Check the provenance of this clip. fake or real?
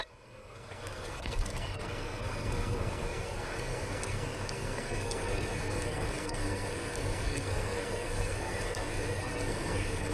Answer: fake